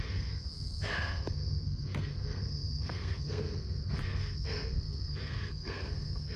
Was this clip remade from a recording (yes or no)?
yes